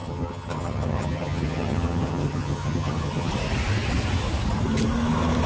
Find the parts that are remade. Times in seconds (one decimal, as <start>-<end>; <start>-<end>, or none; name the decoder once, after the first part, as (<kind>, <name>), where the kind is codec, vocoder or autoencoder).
0.0-3.3 (vocoder, HiFi-GAN)

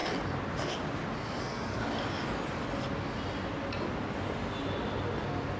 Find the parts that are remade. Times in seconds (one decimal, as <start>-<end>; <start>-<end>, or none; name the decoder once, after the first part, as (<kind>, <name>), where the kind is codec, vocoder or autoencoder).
1.4-1.8 (codec, SNAC)

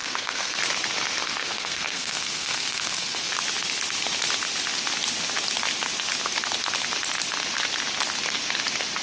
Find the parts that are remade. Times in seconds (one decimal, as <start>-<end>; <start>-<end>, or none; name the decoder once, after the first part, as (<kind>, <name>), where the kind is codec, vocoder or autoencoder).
0.0-0.6 (codec, SNAC); 1.2-3.3

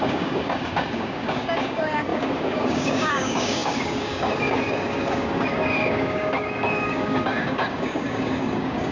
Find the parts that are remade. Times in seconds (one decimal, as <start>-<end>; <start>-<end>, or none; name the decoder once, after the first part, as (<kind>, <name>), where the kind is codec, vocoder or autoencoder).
0.0-8.9 (codec, DAC)